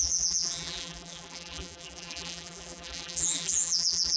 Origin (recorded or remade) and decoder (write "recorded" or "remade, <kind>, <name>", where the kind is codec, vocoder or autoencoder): remade, vocoder, BigVGAN v2